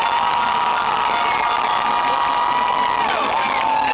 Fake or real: real